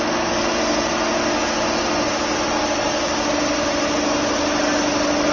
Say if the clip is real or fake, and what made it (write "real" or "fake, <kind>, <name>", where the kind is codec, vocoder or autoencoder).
real